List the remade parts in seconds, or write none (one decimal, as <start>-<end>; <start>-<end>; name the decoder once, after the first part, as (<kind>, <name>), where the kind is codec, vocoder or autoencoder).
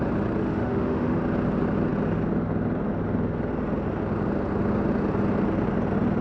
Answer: 0.4-1.2 (autoencoder, DAC-VAE)